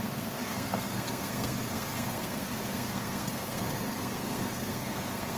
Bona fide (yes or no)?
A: no